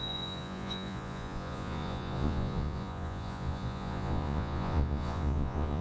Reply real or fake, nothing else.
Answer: fake